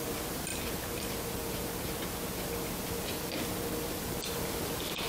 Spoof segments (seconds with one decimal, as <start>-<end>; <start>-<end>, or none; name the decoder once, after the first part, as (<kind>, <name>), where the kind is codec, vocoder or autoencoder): none